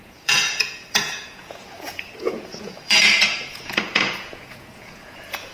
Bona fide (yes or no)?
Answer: no